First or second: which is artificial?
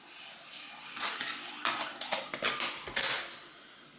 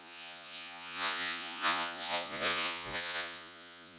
second